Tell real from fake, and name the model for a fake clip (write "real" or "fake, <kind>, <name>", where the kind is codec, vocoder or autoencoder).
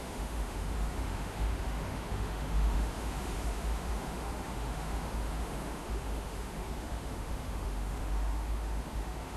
fake, autoencoder, DAC-VAE